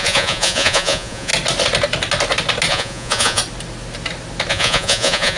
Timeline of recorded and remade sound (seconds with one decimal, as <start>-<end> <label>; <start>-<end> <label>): 0.0-1.3 remade; 1.3-2.7 recorded; 2.7-3.4 remade; 3.4-4.5 recorded; 4.5-5.4 remade